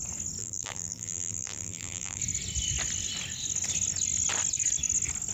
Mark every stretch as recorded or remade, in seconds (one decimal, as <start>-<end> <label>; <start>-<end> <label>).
0.0-0.4 recorded; 0.4-2.2 remade; 2.2-5.3 recorded